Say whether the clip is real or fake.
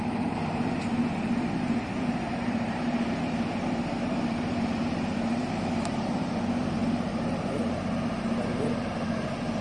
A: fake